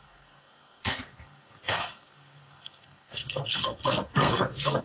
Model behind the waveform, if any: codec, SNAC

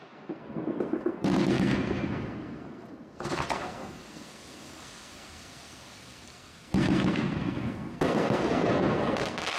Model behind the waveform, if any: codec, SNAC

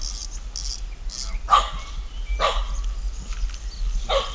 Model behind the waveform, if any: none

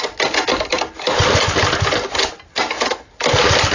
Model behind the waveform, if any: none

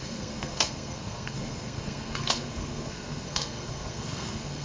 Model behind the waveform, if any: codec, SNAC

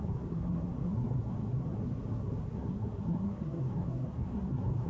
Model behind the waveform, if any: codec, SNAC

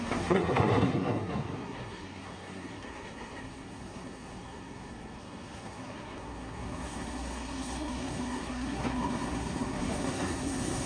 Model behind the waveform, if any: codec, SNAC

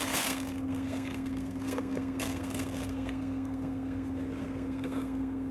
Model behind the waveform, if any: codec, SNAC